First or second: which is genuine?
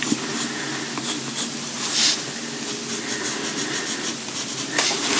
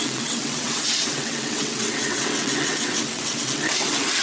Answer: first